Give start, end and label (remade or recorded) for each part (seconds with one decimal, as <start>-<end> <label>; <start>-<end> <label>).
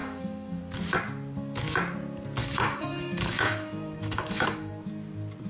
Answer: 0.0-0.6 remade; 0.6-2.4 recorded; 2.4-4.7 remade; 4.7-5.5 recorded